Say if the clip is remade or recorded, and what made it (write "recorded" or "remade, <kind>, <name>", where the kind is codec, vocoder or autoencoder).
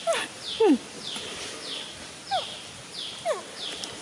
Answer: recorded